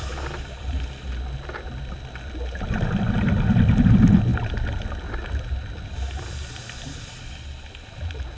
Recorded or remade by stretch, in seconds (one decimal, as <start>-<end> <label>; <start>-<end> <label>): 0.0-8.4 recorded